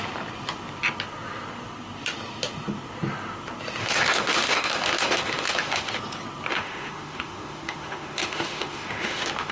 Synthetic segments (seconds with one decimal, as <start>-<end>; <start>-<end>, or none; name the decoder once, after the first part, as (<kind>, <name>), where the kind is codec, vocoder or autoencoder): 3.8-5.9 (autoencoder, DAC-VAE); 6.5-9.5